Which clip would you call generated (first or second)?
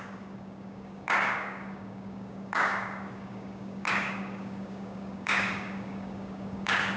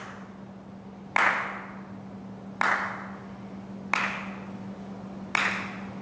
first